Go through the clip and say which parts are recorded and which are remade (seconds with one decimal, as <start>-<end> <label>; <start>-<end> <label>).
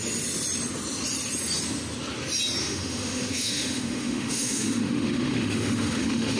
0.0-2.6 recorded; 2.6-6.4 remade